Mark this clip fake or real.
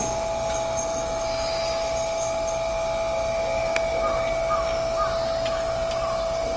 real